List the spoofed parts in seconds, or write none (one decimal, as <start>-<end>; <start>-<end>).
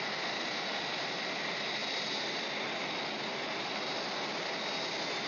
none